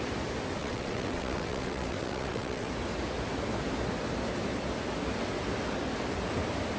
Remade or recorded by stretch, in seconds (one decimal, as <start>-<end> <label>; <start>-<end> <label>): 0.0-0.6 recorded; 0.6-2.7 remade; 2.7-6.8 recorded